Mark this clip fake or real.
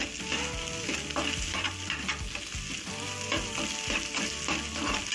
real